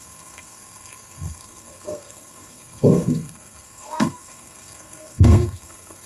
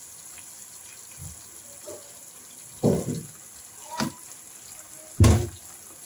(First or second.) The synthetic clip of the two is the first